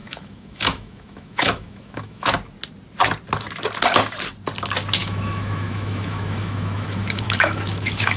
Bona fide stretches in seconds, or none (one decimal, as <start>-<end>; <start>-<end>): 2.3-5.0